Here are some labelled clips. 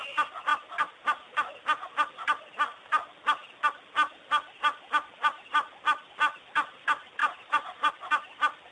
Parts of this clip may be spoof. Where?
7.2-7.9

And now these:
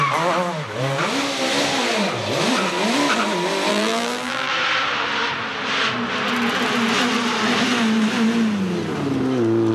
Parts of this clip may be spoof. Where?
3.7-4.5

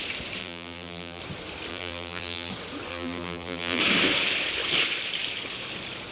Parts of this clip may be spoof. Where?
0.4-1.2; 1.7-2.5; 2.9-3.8

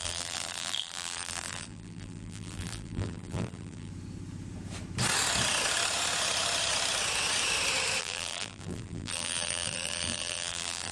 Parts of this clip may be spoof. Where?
0.0-3.9; 8.0-10.9

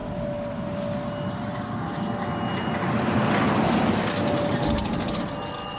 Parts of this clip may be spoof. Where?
none